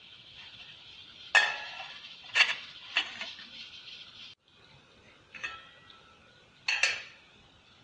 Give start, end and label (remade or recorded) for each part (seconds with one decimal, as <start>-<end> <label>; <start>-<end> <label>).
0.0-0.9 remade; 0.9-1.9 recorded; 1.9-2.9 remade; 2.9-7.3 recorded; 7.3-7.8 remade

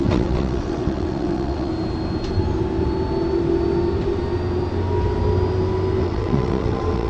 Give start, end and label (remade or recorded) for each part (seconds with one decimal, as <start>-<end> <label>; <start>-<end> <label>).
0.0-1.7 remade; 1.7-6.0 recorded; 6.0-7.1 remade

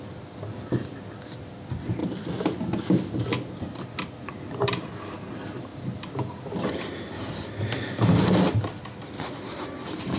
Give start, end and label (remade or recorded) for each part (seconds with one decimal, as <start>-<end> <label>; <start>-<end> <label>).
0.0-10.2 recorded

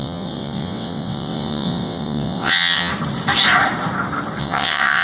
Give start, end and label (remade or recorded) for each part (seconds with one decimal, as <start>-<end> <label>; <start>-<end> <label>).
0.0-2.9 remade; 2.9-4.4 recorded; 4.4-5.0 remade

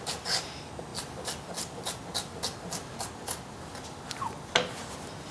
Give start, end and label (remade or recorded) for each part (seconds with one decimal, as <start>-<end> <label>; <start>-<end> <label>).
0.0-5.3 recorded

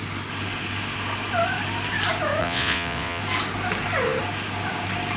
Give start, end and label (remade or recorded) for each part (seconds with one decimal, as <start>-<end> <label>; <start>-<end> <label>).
0.0-2.4 recorded; 2.4-3.2 remade; 3.2-5.2 recorded